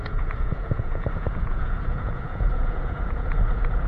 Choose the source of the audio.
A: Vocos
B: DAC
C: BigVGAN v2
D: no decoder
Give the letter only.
A